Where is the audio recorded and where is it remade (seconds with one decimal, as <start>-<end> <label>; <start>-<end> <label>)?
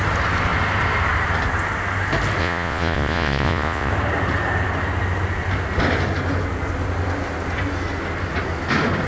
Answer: 0.0-2.4 recorded; 2.4-3.9 remade; 3.9-9.1 recorded